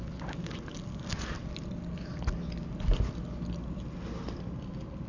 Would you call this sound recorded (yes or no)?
yes